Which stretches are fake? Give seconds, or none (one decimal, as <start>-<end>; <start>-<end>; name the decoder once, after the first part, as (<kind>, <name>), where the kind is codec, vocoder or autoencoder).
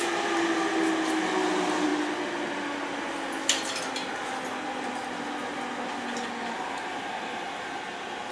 none